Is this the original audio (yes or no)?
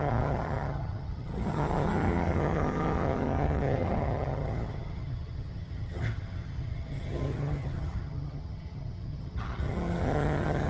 no